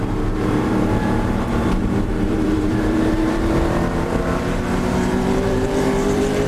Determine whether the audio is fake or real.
fake